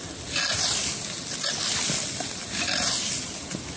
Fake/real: real